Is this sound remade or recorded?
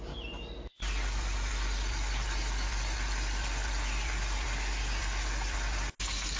recorded